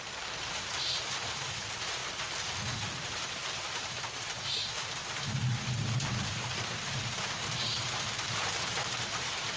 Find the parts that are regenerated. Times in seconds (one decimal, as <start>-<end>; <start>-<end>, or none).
0.0-2.0; 3.0-5.0; 6.3-9.6

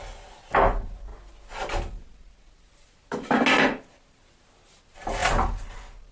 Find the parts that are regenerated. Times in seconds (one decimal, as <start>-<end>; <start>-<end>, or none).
none

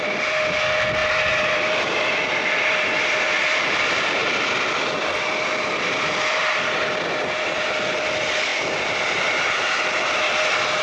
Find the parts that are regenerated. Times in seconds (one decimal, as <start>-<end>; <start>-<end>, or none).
0.0-10.8

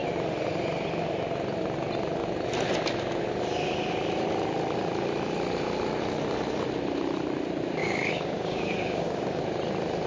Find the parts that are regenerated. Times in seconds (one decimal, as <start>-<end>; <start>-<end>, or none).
7.8-9.4

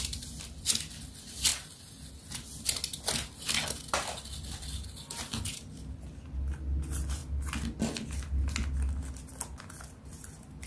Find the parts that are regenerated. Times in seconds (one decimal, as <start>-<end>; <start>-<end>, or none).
none

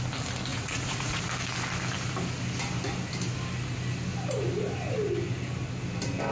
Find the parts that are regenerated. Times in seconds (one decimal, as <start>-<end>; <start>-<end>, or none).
0.5-1.2

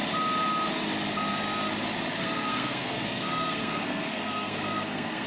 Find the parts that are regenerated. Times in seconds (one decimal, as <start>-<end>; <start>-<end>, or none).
2.1-5.3

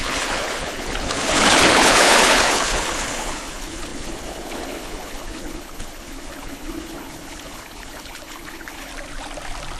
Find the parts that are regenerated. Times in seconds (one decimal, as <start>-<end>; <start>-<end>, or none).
0.0-8.9